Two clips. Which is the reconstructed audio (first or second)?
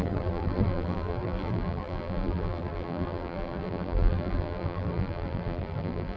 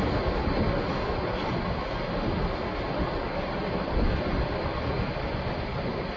first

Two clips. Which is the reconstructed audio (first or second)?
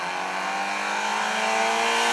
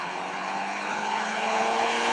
second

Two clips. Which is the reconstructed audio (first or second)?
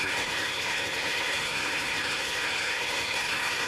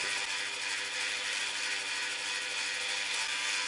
first